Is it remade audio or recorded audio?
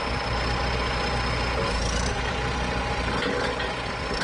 recorded